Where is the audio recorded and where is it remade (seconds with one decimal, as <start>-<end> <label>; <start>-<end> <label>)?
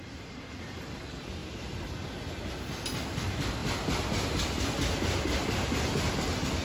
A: 0.0-6.6 recorded